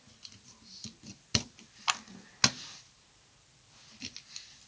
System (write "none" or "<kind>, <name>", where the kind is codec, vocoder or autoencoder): none